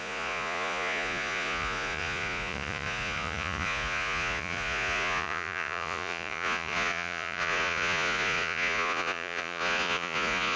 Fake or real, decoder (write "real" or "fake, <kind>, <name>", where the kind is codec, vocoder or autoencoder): fake, vocoder, Vocos